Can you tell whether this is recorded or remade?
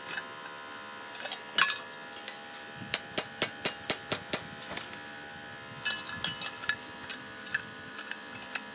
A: recorded